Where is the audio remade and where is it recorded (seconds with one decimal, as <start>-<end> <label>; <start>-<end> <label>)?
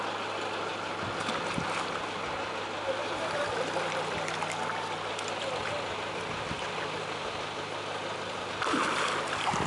0.0-9.7 recorded